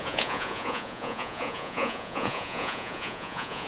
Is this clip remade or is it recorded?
remade